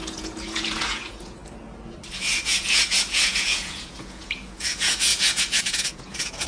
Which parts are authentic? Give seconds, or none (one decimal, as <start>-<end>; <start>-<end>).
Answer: 1.4-2.1